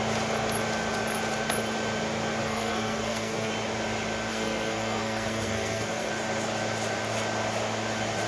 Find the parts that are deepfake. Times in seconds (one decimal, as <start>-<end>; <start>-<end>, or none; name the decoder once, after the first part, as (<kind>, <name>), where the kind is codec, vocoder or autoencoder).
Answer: 2.4-3.5 (codec, SNAC); 4.3-6.1